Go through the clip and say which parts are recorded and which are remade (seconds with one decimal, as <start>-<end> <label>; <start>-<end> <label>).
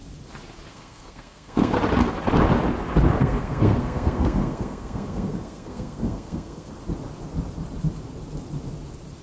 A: 0.0-0.7 recorded; 0.7-1.8 remade; 1.8-3.2 recorded; 3.2-6.7 remade; 6.7-9.2 recorded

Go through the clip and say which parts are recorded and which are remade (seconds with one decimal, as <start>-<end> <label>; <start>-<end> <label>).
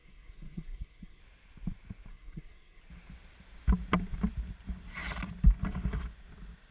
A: 0.0-1.2 remade; 1.2-2.1 recorded; 2.1-2.8 remade; 2.8-6.7 recorded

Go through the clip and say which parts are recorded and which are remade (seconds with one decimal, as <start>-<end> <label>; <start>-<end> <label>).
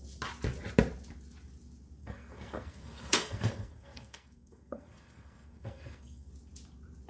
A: 0.0-2.0 recorded; 2.0-6.3 remade; 6.3-7.1 recorded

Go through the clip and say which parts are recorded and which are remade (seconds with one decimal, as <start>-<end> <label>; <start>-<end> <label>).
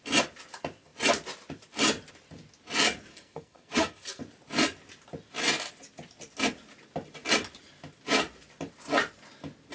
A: 0.0-3.1 recorded; 3.1-4.2 remade; 4.2-9.7 recorded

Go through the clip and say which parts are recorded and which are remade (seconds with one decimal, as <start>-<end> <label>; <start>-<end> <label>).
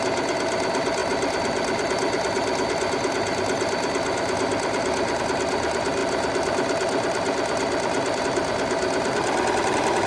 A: 0.0-10.1 recorded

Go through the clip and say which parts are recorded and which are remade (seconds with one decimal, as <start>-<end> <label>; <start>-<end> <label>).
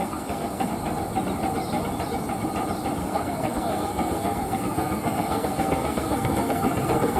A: 0.0-0.7 remade; 0.7-3.0 recorded; 3.0-7.2 remade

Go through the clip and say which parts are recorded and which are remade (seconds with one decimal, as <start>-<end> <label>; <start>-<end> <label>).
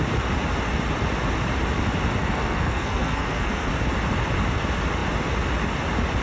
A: 0.0-2.2 recorded; 2.2-3.7 remade; 3.7-6.2 recorded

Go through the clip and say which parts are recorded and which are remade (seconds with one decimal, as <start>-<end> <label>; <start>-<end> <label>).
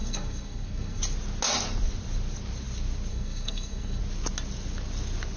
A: 0.0-1.0 remade; 1.0-3.1 recorded; 3.1-4.0 remade; 4.0-5.4 recorded